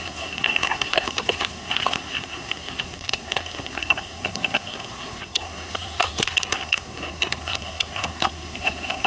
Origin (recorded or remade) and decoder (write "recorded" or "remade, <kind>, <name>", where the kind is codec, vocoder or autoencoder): remade, codec, SNAC